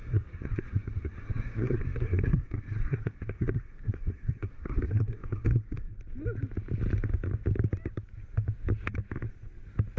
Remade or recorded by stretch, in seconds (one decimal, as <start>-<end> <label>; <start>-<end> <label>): 0.0-5.9 remade; 5.9-10.0 recorded